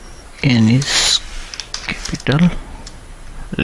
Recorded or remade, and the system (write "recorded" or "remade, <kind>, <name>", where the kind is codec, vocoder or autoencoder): recorded